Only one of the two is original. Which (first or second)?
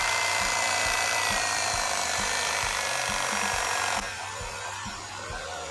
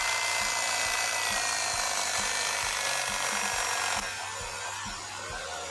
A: second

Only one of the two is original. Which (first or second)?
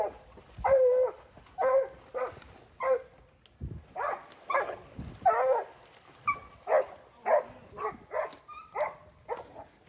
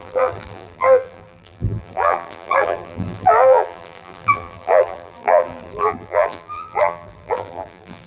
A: first